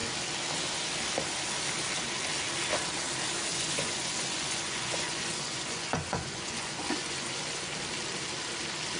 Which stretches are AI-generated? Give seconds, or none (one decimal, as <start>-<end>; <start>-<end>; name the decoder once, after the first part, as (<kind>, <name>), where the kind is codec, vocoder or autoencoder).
3.5-7.7 (vocoder, Vocos)